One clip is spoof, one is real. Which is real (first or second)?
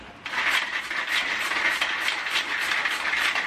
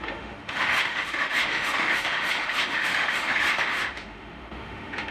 first